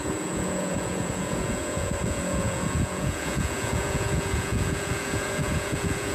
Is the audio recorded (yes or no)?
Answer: no